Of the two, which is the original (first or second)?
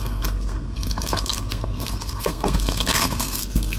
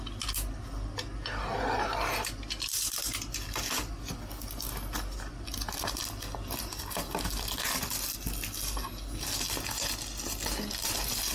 second